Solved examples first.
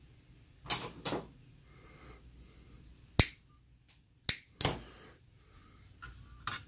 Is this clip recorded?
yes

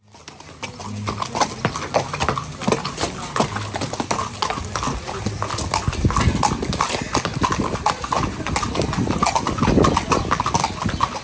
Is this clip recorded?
yes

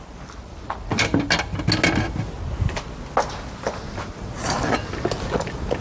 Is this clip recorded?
yes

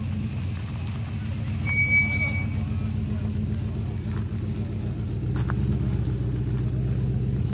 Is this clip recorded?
yes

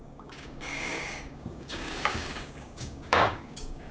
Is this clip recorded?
no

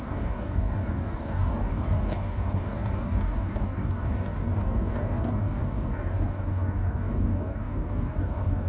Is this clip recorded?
no